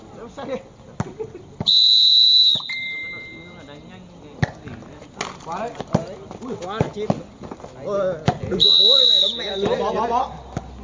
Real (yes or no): yes